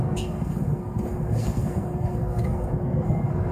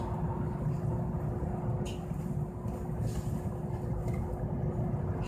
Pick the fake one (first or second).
first